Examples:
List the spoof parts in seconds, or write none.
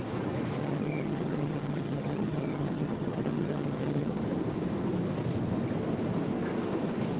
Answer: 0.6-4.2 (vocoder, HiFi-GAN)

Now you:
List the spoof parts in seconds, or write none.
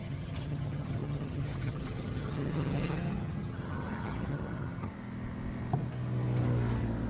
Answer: 0.0-4.9 (vocoder, HiFi-GAN)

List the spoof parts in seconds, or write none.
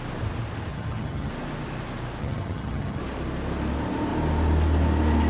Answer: 0.7-1.3 (vocoder, HiFi-GAN); 2.2-3.0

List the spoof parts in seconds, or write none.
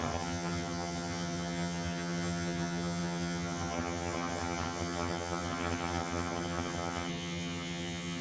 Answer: 0.0-8.2 (vocoder, HiFi-GAN)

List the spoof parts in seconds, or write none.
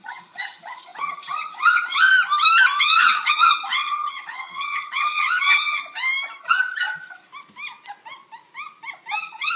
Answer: 0.0-2.1 (vocoder, HiFi-GAN); 2.8-5.8; 6.4-7.3; 9.2-9.6